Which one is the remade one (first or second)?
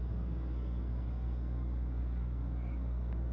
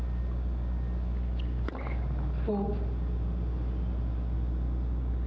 first